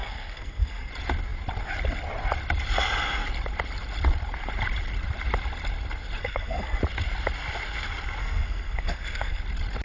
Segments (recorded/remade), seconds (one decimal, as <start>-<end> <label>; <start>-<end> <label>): 0.0-0.9 remade; 0.9-6.2 recorded; 6.2-6.8 remade; 6.8-8.2 recorded; 8.2-9.4 remade; 9.4-9.8 recorded